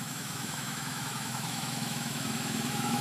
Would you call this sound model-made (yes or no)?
yes